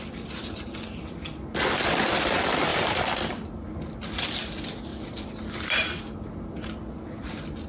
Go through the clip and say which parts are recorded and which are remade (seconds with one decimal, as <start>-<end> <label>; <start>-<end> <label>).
0.0-2.7 recorded; 2.7-3.3 remade; 3.3-4.9 recorded; 4.9-5.6 remade; 5.6-7.7 recorded